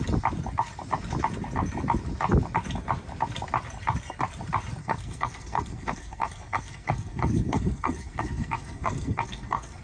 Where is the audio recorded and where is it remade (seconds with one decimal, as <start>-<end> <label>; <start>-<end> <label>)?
0.0-4.8 recorded; 4.8-9.8 remade